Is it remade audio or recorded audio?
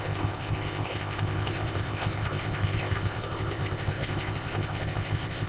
remade